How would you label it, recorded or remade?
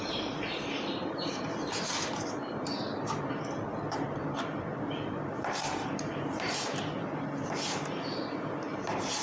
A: remade